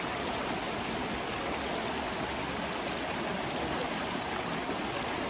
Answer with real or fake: real